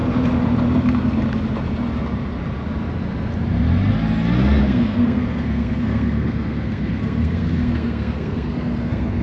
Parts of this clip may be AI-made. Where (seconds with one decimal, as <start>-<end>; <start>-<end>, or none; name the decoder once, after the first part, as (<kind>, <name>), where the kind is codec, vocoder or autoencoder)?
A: 4.6-9.2 (codec, SNAC)